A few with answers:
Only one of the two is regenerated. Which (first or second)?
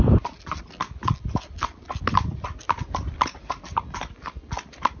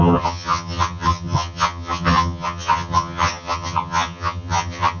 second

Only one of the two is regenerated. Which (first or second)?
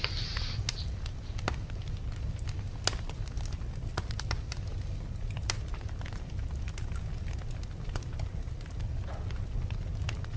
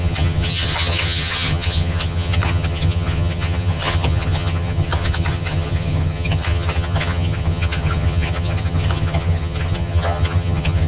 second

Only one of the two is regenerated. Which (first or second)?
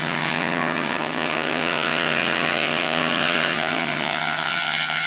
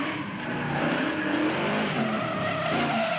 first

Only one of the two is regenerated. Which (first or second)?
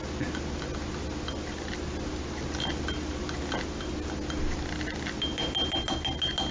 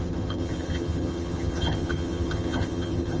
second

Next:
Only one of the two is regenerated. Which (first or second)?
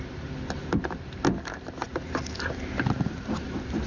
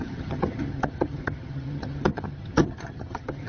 second